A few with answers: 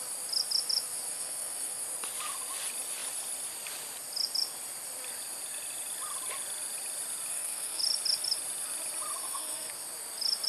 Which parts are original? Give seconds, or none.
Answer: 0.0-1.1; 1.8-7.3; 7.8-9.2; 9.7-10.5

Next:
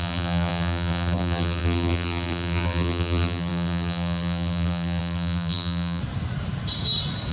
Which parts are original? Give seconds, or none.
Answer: 6.0-7.3